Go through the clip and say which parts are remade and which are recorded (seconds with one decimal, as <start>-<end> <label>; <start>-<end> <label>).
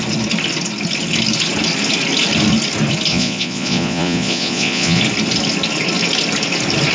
0.0-3.1 recorded; 3.1-5.0 remade; 5.0-6.9 recorded